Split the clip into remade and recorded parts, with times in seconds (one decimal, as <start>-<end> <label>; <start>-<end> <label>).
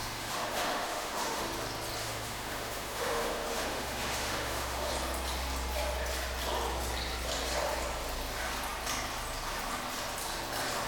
0.0-1.4 remade; 1.4-2.0 recorded; 2.0-4.9 remade; 4.9-10.9 recorded